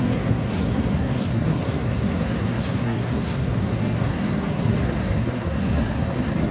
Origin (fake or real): fake